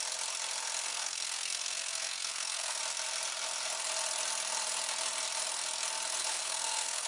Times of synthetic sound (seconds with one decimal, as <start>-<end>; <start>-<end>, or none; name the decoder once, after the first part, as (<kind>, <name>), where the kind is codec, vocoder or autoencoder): 0.9-2.8 (codec, SNAC); 6.4-7.1